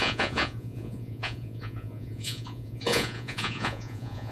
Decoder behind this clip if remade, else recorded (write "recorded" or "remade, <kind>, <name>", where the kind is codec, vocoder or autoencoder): remade, vocoder, Vocos